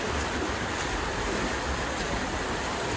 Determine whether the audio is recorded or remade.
recorded